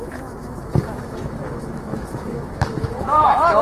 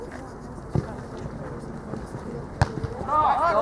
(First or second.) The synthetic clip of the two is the first